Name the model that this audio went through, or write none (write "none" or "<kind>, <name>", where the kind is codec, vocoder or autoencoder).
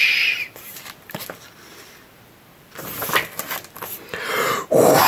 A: none